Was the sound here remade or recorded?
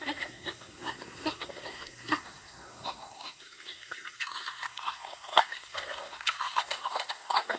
remade